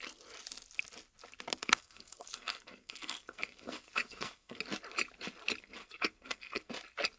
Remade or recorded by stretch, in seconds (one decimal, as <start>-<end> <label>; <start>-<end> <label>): 0.0-1.6 recorded; 1.6-4.6 remade; 4.6-5.8 recorded; 5.8-6.7 remade; 6.7-7.2 recorded